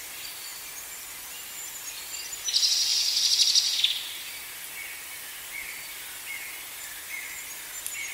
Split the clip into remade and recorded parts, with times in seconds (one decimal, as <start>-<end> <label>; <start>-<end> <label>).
0.0-8.1 recorded